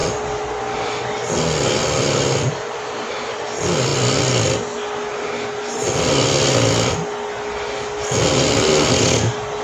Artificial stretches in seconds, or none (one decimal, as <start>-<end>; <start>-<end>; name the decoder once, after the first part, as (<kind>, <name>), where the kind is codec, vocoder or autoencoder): none